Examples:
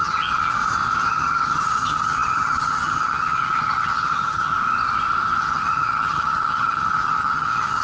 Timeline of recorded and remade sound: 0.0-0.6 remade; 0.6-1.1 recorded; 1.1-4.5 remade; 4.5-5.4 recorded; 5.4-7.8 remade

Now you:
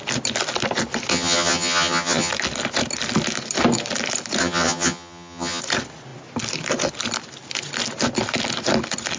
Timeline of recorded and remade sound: 0.0-1.1 recorded; 1.1-2.3 remade; 2.3-4.4 recorded; 4.4-5.6 remade; 5.6-9.2 recorded

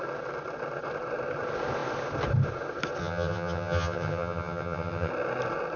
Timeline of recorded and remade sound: 0.0-3.0 recorded; 3.0-5.1 remade; 5.1-5.8 recorded

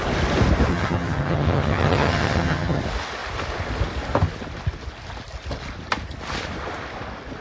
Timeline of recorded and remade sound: 0.0-0.7 recorded; 0.7-2.8 remade; 2.8-7.4 recorded

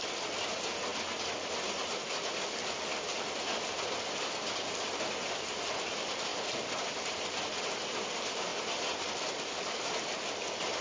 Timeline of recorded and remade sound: 0.0-10.8 recorded

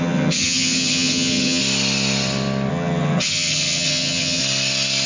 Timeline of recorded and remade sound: 0.0-1.6 remade; 1.6-2.7 recorded; 2.7-4.4 remade; 4.4-5.1 recorded

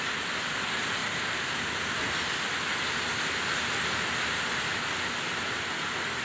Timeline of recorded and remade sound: 0.0-6.2 recorded